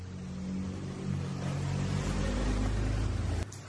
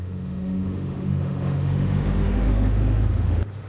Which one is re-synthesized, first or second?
second